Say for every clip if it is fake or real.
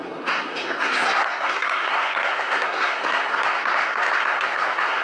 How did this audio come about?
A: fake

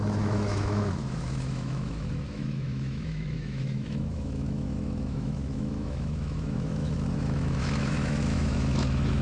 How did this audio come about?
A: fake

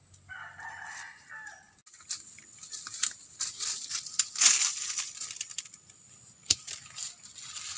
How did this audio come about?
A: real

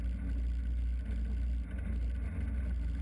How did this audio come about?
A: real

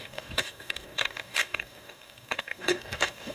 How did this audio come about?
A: fake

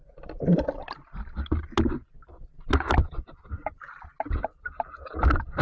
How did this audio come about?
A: real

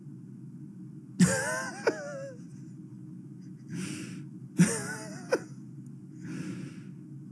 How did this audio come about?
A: real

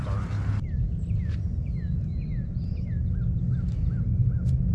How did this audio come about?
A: real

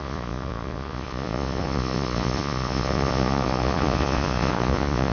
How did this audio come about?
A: fake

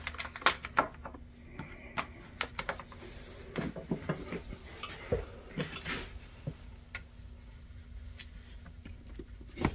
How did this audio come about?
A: real